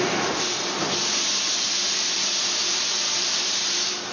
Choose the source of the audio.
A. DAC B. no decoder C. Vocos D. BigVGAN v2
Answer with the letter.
D